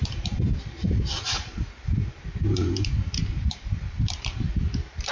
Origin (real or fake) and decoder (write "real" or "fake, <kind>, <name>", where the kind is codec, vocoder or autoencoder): fake, vocoder, BigVGAN v2